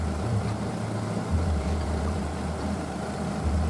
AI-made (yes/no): yes